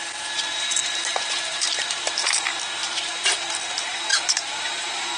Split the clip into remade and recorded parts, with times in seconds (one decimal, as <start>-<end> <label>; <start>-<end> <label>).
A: 0.0-0.8 recorded; 0.8-2.4 remade; 2.4-2.8 recorded; 2.8-3.5 remade; 3.5-4.1 recorded; 4.1-5.2 remade